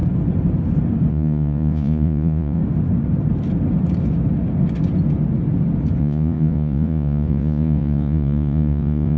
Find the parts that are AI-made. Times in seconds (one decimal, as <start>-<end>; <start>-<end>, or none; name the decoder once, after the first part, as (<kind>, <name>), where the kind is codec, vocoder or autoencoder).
1.1-2.6 (vocoder, Vocos); 6.0-9.2